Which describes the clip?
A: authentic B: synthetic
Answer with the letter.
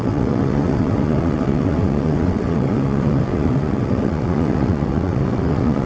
B